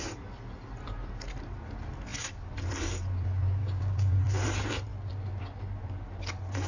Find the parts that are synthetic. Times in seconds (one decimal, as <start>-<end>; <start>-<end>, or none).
3.6-4.2